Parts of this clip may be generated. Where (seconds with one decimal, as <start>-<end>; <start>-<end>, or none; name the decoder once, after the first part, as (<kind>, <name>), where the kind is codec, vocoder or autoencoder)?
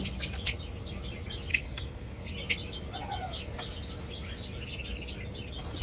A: 1.5-2.3 (codec, SNAC)